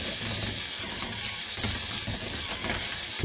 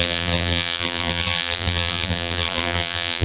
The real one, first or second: first